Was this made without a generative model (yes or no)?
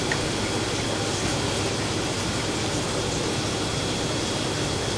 yes